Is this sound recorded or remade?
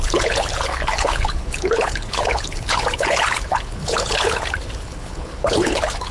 remade